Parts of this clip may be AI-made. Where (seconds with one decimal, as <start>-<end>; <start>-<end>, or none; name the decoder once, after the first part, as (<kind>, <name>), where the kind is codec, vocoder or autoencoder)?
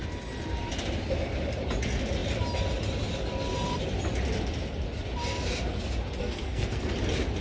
6.2-6.9 (codec, SNAC)